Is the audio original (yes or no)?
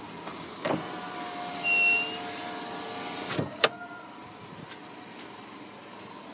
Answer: yes